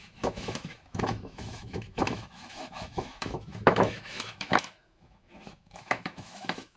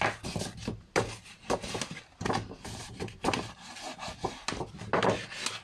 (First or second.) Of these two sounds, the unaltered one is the second